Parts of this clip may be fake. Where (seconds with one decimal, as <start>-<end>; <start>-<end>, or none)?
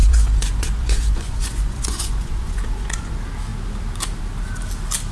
0.0-3.1